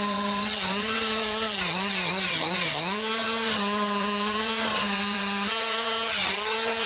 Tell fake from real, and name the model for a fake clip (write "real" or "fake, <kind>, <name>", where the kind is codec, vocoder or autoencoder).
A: fake, vocoder, HiFi-GAN